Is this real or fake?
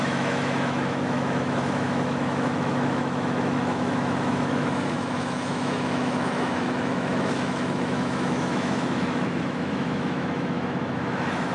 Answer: fake